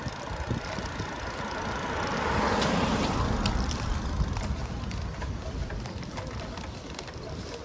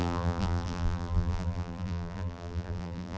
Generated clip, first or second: second